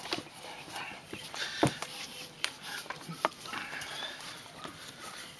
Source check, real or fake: real